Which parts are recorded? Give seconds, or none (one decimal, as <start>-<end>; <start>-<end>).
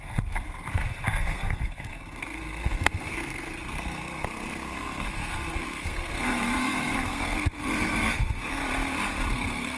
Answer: 8.6-9.3